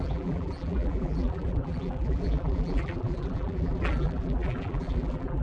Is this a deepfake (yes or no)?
yes